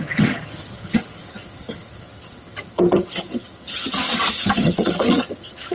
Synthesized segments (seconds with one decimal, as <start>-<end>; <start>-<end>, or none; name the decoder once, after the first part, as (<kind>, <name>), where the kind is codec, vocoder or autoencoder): 0.0-5.7 (vocoder, HiFi-GAN)